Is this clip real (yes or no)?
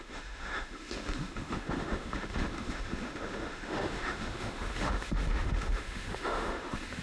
no